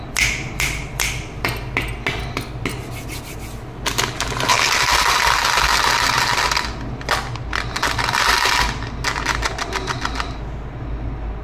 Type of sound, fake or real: real